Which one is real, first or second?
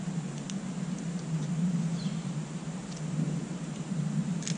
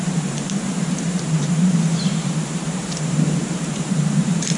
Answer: first